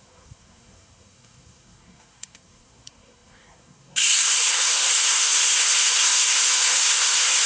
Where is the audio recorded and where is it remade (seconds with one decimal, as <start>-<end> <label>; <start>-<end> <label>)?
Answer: 0.0-7.5 remade